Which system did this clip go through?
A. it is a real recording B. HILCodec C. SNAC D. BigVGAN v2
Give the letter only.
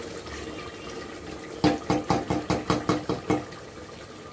A